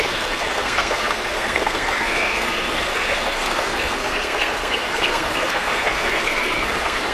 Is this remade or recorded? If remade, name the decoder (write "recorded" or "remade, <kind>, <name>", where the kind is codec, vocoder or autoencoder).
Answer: remade, codec, SNAC